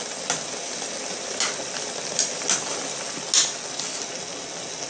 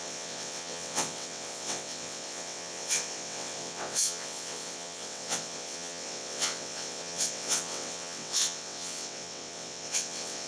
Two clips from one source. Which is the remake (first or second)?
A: second